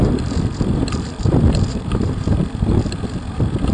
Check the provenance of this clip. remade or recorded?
remade